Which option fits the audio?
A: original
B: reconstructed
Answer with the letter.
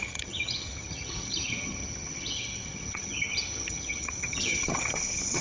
B